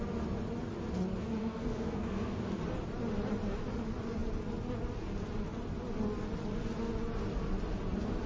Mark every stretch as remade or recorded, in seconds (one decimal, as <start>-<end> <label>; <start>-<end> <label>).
0.0-1.4 recorded; 1.4-2.6 remade; 2.6-8.3 recorded